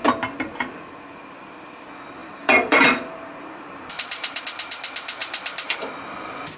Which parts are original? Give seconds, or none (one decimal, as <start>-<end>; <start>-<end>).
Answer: 0.0-2.2; 4.4-5.2; 5.9-6.6